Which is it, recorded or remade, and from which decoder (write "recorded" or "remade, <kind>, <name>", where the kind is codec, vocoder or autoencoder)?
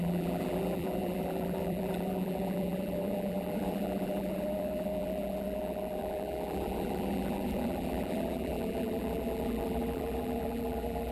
remade, vocoder, BigVGAN v2